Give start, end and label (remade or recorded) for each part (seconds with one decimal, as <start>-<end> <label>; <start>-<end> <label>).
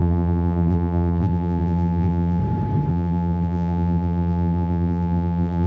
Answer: 0.0-2.4 remade; 2.4-2.9 recorded; 2.9-5.7 remade